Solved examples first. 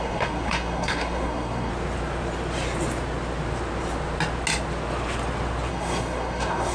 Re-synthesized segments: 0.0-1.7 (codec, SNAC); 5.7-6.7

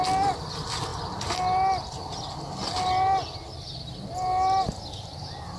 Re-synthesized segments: none